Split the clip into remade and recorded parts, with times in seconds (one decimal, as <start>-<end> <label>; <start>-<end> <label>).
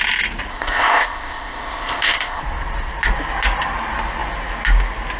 0.0-0.5 recorded; 0.5-2.4 remade; 2.4-5.2 recorded